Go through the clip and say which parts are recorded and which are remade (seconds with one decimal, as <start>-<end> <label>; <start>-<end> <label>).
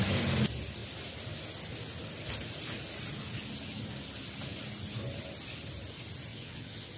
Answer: 0.0-6.3 recorded; 6.3-7.0 remade